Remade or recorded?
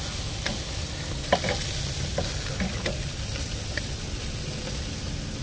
recorded